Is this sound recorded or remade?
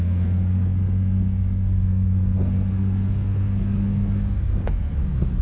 remade